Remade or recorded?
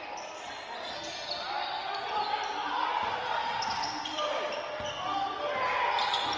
recorded